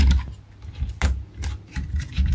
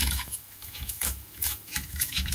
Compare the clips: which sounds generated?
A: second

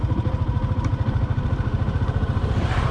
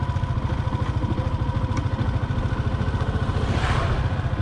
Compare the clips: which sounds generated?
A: first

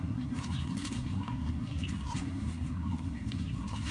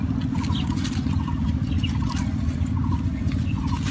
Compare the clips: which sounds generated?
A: first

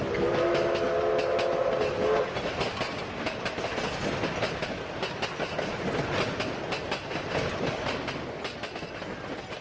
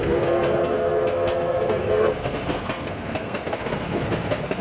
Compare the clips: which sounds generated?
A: second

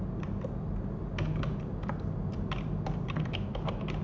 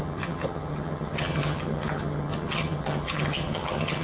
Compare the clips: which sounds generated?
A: second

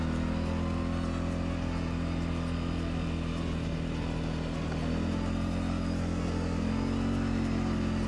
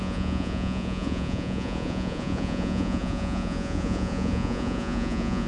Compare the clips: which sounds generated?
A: second